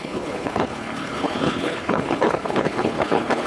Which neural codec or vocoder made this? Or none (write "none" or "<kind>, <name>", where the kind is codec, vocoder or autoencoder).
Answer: codec, HILCodec